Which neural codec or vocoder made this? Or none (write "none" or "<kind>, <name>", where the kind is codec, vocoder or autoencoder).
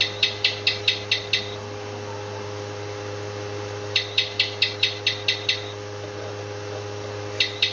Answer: none